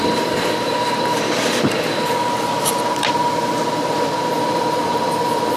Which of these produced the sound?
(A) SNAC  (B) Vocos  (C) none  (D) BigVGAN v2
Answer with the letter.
D